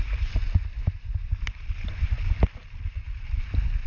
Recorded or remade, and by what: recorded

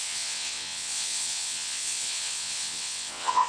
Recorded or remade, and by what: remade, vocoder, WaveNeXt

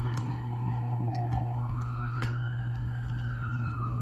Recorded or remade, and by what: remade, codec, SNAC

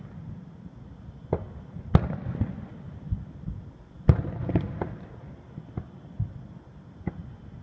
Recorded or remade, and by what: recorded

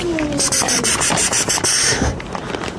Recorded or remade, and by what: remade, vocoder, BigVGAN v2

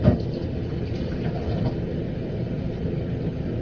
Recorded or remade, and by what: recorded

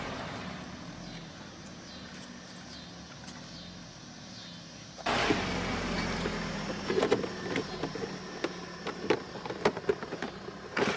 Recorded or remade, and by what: recorded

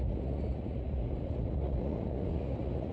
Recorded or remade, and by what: remade, vocoder, Vocos